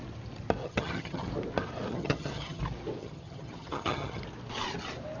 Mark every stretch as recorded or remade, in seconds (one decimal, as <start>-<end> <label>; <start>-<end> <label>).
0.0-0.6 recorded; 0.6-1.3 remade; 1.3-1.9 recorded; 1.9-2.6 remade; 2.6-3.0 recorded; 3.0-4.2 remade; 4.2-5.2 recorded